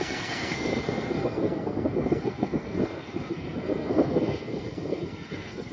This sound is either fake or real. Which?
fake